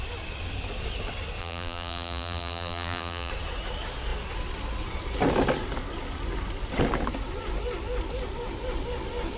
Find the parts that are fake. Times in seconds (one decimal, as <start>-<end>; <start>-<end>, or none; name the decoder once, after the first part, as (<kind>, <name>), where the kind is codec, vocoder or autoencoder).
1.4-3.3 (vocoder, BigVGAN v2)